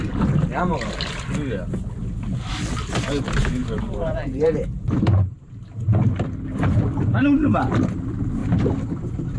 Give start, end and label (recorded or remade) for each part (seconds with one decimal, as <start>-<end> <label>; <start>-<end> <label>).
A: 0.0-3.6 recorded; 3.6-5.5 remade; 5.5-8.4 recorded; 8.4-9.0 remade; 9.0-9.4 recorded